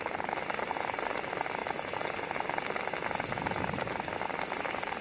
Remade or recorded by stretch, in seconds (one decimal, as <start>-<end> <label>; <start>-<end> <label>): 0.0-5.0 recorded